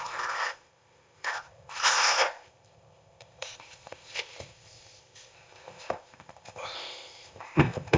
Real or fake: fake